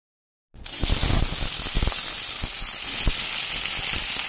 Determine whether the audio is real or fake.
real